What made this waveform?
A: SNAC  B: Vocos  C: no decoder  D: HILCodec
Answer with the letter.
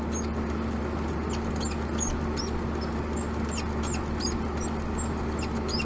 C